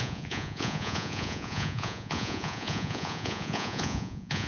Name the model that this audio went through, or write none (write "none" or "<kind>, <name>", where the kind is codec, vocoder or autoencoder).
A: vocoder, Vocos